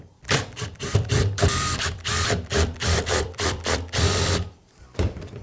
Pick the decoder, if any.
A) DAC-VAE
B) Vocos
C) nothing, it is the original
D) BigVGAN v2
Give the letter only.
D